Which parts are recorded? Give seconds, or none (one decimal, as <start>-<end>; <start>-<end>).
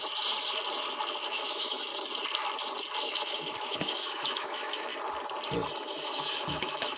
0.0-1.3; 1.9-3.0; 4.9-5.8